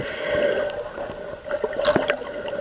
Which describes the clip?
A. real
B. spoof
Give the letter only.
A